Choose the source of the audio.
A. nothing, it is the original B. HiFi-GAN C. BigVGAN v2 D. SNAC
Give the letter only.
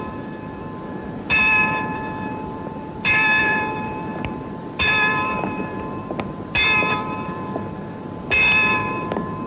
A